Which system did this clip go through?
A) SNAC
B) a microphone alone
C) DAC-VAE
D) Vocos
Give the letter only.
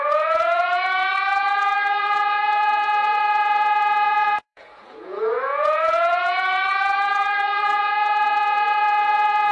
D